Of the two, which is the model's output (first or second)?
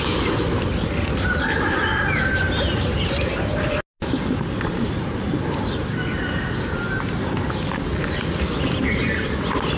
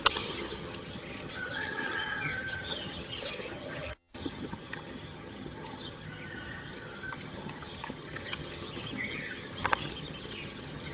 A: second